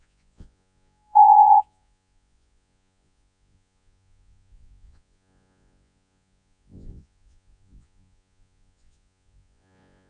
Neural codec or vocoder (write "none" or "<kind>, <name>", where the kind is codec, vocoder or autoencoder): vocoder, Vocos